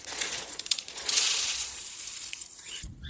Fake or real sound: fake